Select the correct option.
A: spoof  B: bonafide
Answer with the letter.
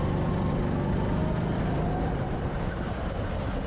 B